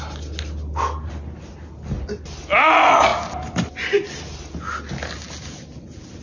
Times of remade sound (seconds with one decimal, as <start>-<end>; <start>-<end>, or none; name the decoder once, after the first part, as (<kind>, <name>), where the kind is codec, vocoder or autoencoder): none